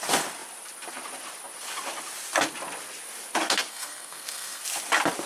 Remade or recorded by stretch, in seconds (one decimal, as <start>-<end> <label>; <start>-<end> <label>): 0.0-3.7 recorded; 3.7-4.6 remade; 4.6-5.3 recorded